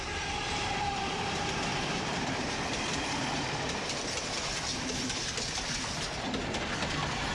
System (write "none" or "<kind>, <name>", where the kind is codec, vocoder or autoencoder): vocoder, BigVGAN v2